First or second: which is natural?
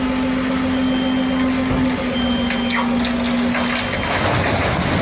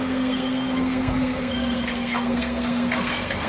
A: first